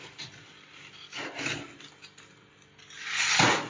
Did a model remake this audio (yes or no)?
no